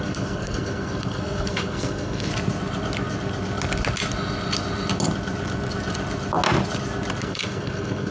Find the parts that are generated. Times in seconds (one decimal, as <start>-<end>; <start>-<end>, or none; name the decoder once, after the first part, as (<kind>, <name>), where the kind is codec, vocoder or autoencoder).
0.0-2.3 (codec, SNAC); 7.2-8.1